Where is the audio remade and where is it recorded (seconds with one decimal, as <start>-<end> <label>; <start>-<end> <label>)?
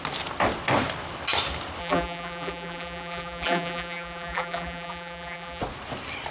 0.0-1.8 recorded; 1.8-5.6 remade; 5.6-6.3 recorded